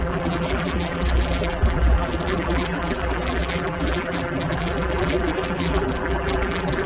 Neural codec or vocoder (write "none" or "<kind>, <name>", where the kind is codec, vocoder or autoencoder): vocoder, BigVGAN v2